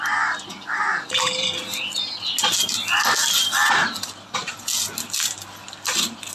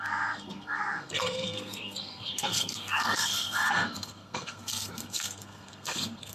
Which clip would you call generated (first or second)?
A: second